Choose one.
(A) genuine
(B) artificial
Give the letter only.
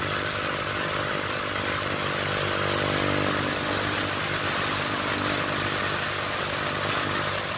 A